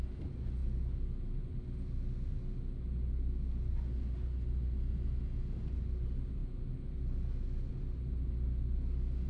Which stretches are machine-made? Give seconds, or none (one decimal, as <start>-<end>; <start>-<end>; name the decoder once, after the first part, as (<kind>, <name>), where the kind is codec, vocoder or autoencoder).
none